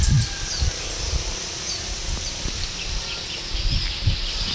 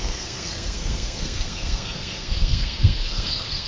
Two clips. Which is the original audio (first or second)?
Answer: first